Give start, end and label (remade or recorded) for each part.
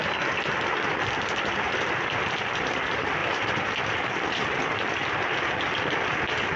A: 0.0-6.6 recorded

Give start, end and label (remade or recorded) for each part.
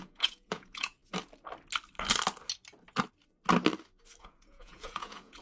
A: 0.0-1.0 remade; 1.0-4.2 recorded; 4.2-5.4 remade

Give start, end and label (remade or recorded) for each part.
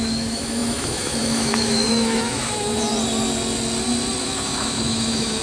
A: 0.0-2.9 remade; 2.9-4.2 recorded; 4.2-5.4 remade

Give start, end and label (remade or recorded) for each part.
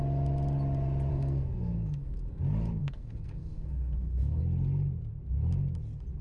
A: 0.0-1.1 recorded; 1.1-2.4 remade; 2.4-2.8 recorded; 2.8-4.4 remade; 4.4-6.2 recorded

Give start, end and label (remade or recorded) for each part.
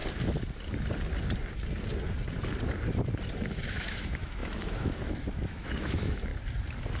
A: 0.0-3.5 recorded; 3.5-6.3 remade; 6.3-7.0 recorded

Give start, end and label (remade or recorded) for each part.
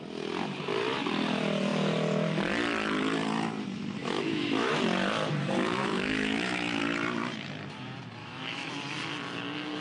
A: 0.0-4.0 recorded; 4.0-4.7 remade; 4.7-5.6 recorded; 5.6-6.8 remade; 6.8-8.2 recorded; 8.2-8.7 remade; 8.7-9.8 recorded